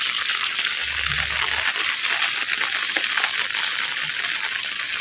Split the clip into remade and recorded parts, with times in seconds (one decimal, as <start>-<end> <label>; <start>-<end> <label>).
0.0-5.0 recorded